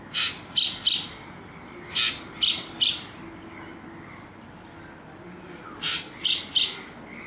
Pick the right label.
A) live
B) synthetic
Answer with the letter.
A